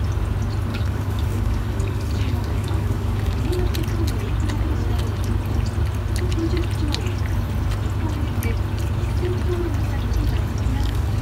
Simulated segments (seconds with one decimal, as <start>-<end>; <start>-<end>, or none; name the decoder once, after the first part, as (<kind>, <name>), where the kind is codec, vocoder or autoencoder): 0.7-3.6 (codec, DAC); 10.7-11.2